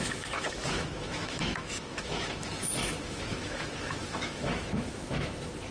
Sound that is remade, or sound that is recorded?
remade